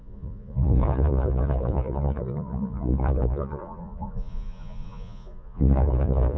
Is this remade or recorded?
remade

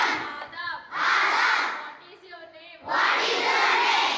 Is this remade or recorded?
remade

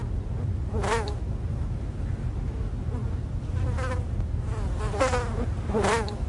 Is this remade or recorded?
recorded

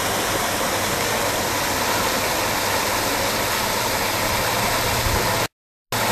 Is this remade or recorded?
recorded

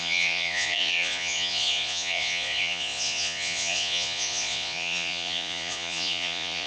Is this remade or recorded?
remade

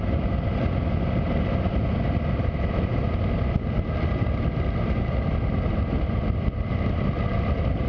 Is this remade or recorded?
recorded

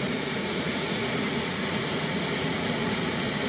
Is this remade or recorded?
remade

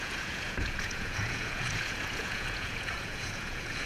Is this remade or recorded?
remade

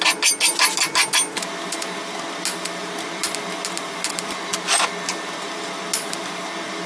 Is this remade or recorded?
recorded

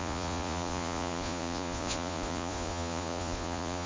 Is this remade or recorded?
remade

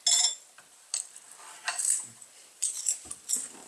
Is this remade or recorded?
recorded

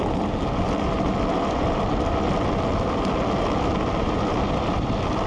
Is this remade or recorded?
recorded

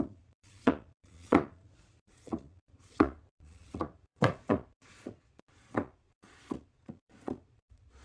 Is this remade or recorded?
remade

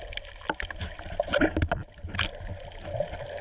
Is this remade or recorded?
recorded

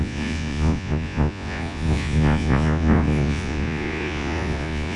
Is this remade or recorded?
remade